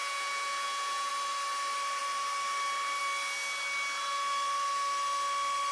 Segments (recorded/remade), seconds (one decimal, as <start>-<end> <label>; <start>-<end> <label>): 0.0-1.1 remade; 1.1-5.7 recorded